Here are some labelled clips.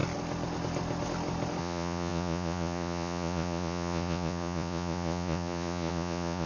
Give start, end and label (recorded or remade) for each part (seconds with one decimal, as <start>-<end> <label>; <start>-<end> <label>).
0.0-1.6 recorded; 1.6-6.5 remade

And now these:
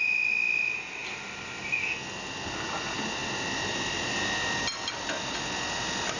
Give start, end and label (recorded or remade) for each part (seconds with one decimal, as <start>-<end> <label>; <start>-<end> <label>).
0.0-6.2 recorded

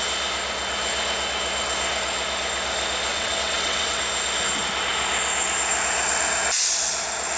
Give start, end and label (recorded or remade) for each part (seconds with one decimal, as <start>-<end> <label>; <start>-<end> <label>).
0.0-3.1 recorded; 3.1-4.0 remade; 4.0-7.4 recorded